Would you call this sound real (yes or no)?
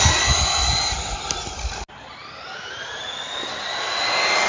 yes